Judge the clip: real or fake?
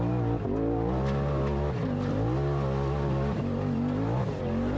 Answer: real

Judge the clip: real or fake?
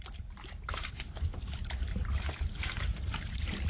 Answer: fake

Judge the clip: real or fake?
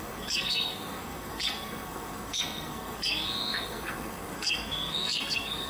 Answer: fake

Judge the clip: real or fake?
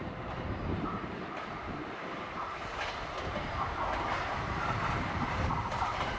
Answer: fake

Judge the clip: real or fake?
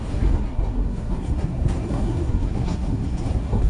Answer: fake